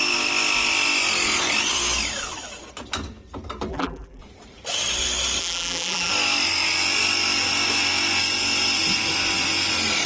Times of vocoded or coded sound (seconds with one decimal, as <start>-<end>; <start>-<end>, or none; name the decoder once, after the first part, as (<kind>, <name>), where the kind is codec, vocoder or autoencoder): 3.7-4.2 (vocoder, BigVGAN v2); 5.4-6.1